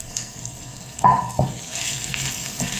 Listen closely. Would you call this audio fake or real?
fake